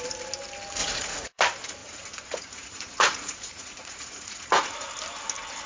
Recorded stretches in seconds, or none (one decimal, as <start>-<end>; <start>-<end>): 0.0-0.8; 1.4-1.8; 4.9-5.7